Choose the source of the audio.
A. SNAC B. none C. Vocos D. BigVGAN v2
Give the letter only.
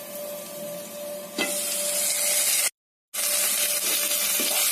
B